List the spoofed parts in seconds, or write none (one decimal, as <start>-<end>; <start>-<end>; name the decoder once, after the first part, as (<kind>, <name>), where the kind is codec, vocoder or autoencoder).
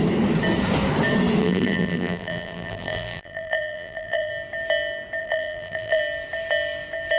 1.4-4.3 (vocoder, BigVGAN v2); 5.2-6.0